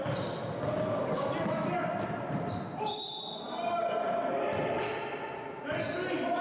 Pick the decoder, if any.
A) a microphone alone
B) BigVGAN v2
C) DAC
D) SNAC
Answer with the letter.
A